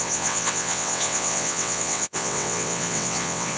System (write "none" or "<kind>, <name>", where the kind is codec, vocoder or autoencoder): vocoder, WaveNeXt